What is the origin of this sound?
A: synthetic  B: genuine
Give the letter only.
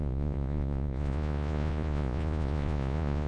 A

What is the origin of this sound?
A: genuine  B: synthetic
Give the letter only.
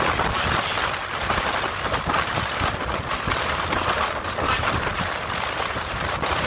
A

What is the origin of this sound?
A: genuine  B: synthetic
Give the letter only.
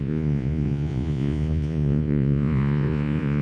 B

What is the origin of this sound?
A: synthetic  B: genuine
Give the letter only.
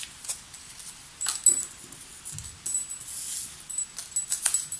B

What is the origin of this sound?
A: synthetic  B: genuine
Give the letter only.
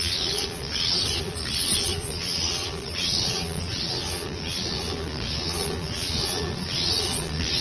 A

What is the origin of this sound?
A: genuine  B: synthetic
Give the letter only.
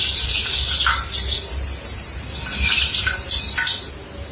A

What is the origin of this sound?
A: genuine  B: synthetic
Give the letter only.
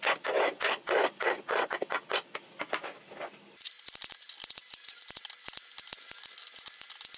A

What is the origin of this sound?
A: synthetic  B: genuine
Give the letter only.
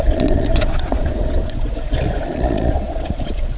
A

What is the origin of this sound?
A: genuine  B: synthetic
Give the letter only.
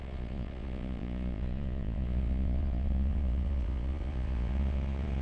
B